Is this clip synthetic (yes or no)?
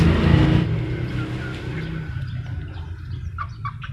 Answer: no